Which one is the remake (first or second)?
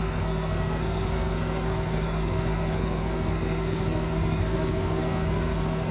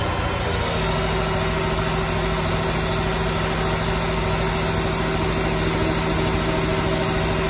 first